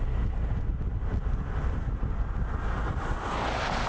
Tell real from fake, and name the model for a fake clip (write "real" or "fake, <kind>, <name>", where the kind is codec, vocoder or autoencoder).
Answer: real